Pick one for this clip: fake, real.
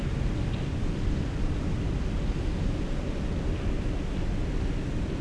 real